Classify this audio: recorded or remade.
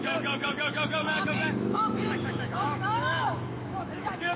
remade